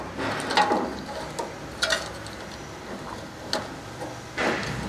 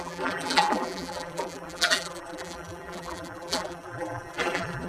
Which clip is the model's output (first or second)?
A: second